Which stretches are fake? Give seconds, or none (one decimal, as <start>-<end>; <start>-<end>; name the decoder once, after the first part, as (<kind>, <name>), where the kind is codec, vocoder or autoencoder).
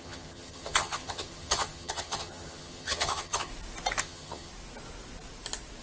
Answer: 0.0-3.5 (vocoder, HiFi-GAN); 4.0-4.5